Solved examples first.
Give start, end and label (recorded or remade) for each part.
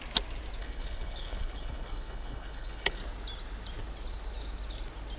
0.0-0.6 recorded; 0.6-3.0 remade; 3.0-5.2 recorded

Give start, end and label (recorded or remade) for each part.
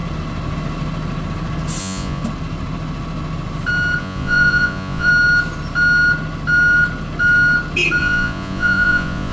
0.0-1.8 recorded; 1.8-2.2 remade; 2.2-4.0 recorded; 4.0-5.1 remade; 5.1-8.0 recorded; 8.0-9.3 remade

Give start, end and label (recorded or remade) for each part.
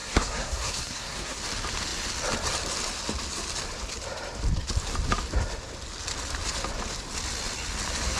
0.0-1.4 remade; 1.4-8.2 recorded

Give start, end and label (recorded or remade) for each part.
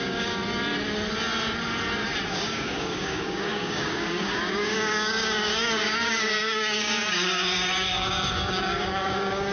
0.0-0.4 remade; 0.4-2.3 recorded; 2.3-9.5 remade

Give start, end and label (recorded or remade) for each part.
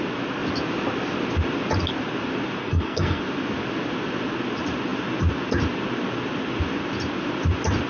0.0-2.6 recorded; 2.6-3.2 remade; 3.2-7.9 recorded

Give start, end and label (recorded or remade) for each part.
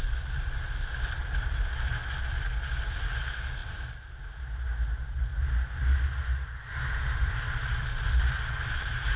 0.0-9.2 recorded